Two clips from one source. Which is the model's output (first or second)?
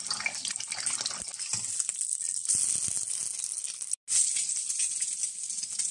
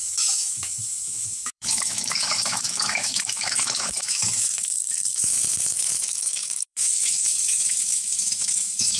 second